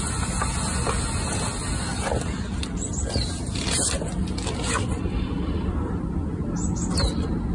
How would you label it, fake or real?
real